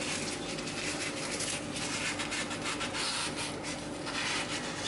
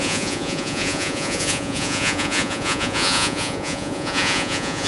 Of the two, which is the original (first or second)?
first